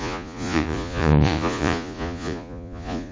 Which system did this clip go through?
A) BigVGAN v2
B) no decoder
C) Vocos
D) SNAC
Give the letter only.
C